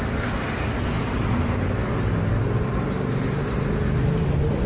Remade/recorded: recorded